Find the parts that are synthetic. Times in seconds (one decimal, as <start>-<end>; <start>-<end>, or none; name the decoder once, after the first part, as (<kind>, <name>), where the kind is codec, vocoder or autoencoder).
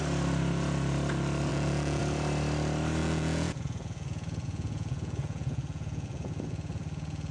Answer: 1.5-2.0 (vocoder, Vocos); 3.0-7.3